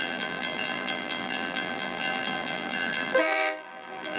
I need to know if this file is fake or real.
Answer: fake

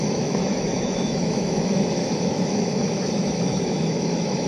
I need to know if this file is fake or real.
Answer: fake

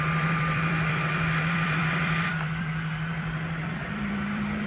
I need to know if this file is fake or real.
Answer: fake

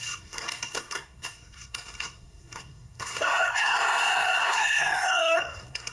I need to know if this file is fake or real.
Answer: fake